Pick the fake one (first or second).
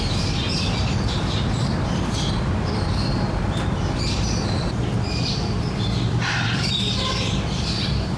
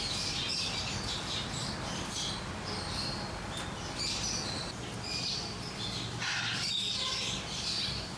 first